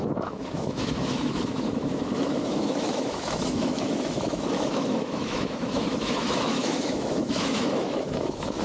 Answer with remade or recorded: remade